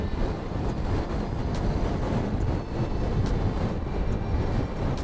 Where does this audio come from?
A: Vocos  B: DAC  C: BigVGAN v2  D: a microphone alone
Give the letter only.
D